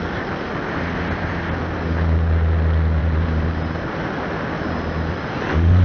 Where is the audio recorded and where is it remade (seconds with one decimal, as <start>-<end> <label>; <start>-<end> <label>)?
0.0-3.0 recorded; 3.0-4.0 remade; 4.0-5.8 recorded